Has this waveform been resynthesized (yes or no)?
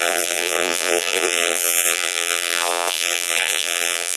yes